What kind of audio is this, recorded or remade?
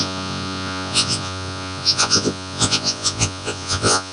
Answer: remade